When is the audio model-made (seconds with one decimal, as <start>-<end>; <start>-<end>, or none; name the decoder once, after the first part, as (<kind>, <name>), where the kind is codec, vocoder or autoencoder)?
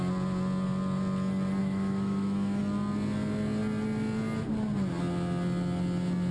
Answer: 1.6-2.6 (autoencoder, DAC-VAE)